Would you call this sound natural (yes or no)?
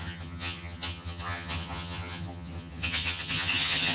no